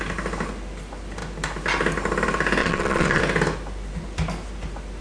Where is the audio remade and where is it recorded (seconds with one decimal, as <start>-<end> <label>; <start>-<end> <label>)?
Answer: 0.0-2.6 recorded; 2.6-3.2 remade; 3.2-5.0 recorded